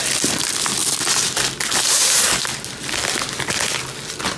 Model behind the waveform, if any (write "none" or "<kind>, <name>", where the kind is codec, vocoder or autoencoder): none